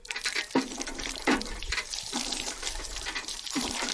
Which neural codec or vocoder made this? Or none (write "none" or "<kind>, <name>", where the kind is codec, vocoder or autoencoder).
vocoder, BigVGAN v2